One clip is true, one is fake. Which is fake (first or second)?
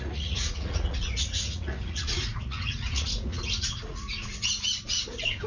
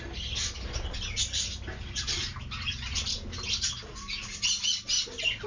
first